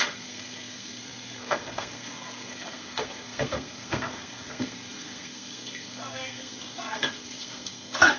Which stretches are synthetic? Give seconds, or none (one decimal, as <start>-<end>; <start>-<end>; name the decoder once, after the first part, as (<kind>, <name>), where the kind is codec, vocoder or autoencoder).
0.0-8.2 (codec, SNAC)